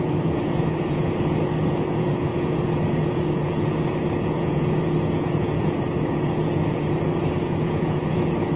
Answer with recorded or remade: remade